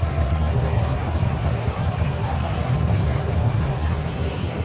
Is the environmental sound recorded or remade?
remade